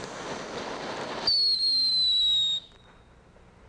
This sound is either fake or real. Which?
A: real